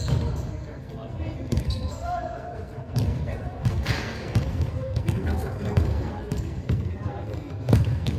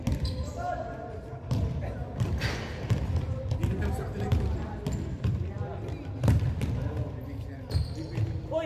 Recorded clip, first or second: second